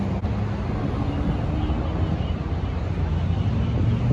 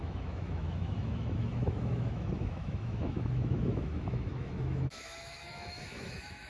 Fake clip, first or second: second